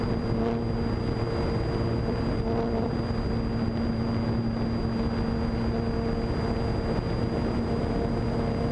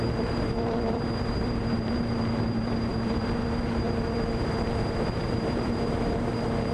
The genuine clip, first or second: first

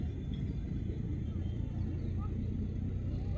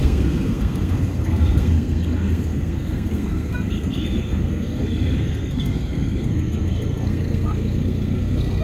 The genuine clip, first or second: first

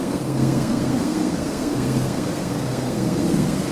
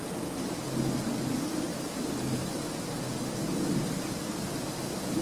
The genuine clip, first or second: second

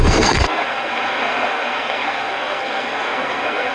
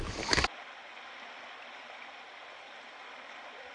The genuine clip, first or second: second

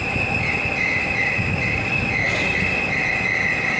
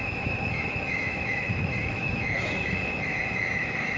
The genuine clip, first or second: first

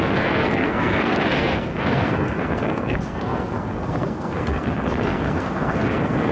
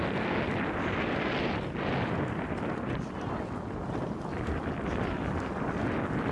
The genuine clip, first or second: second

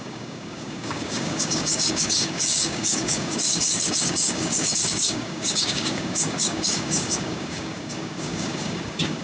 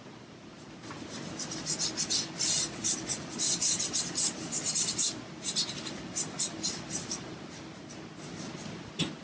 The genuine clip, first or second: second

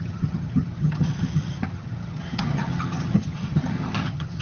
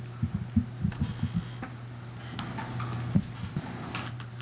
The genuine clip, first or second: second